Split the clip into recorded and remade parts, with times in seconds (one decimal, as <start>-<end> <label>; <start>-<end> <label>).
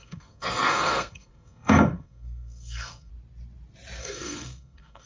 0.0-3.1 remade; 3.1-4.0 recorded; 4.0-5.1 remade